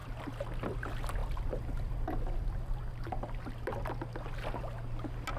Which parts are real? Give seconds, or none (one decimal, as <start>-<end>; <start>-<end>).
0.0-1.2; 3.1-5.4